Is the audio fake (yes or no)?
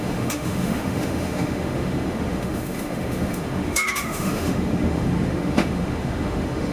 yes